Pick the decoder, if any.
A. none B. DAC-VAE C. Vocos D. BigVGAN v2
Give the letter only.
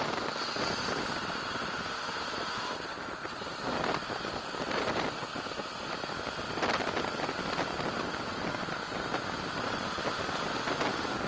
A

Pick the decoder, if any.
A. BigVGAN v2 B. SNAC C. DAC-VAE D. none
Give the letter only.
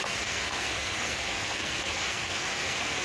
B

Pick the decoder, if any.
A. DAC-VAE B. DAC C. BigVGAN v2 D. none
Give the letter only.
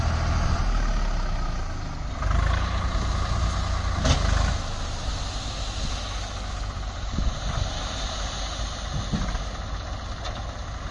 D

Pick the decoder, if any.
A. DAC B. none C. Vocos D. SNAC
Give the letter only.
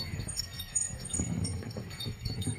D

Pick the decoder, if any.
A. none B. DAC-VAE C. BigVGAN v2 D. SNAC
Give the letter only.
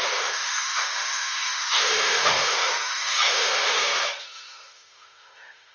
B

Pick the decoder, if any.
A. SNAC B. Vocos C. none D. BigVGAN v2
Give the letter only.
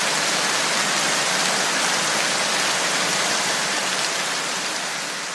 C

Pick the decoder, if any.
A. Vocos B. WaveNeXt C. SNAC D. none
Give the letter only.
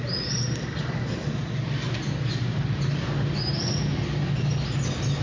D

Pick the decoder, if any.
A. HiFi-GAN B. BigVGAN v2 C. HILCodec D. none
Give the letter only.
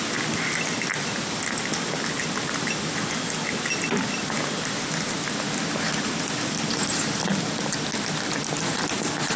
D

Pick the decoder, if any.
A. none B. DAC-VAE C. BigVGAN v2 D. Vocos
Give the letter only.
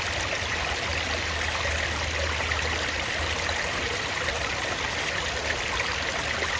A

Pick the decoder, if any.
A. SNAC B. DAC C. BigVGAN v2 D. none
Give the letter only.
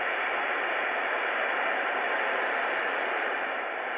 C